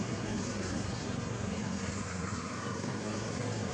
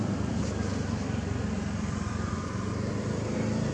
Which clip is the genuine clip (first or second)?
second